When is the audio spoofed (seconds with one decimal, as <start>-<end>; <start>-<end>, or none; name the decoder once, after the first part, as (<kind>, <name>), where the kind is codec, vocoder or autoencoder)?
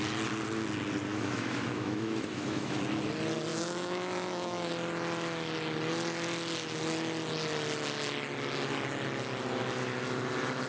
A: 1.1-2.8 (autoencoder, DAC-VAE); 3.5-4.7